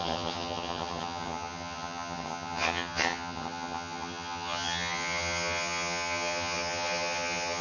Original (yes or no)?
no